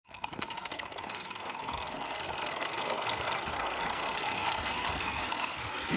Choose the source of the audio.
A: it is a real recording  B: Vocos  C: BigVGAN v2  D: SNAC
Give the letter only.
D